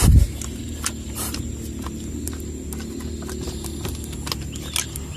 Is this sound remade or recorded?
recorded